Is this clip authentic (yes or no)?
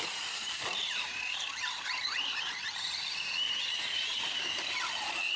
no